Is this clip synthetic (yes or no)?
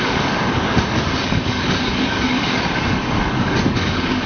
yes